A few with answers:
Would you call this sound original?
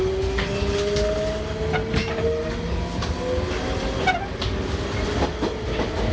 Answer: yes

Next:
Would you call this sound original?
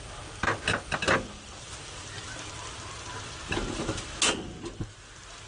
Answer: yes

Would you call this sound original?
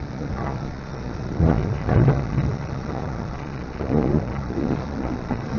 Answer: no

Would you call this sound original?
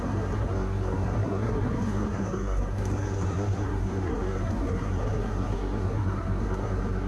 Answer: no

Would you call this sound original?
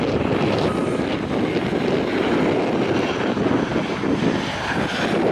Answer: yes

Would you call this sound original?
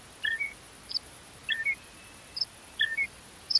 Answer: yes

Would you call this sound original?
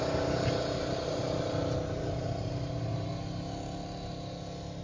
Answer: yes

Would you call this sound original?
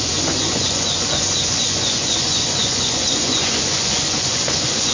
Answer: no